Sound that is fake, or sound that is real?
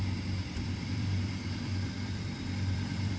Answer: fake